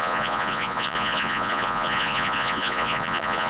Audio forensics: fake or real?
fake